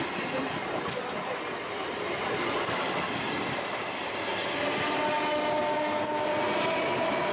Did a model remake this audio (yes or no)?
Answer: no